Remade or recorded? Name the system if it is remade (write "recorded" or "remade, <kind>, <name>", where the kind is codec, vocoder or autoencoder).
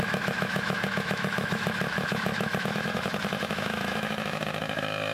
remade, autoencoder, DAC-VAE